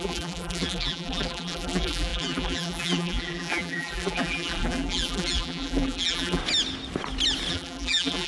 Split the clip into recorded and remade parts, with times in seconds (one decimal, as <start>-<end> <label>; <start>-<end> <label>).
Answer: 0.0-6.4 remade; 6.4-7.5 recorded; 7.5-8.3 remade